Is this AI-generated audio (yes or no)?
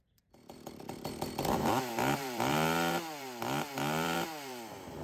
yes